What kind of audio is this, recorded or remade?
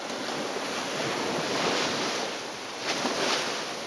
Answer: recorded